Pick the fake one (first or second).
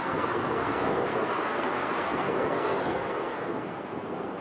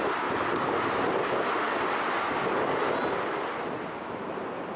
first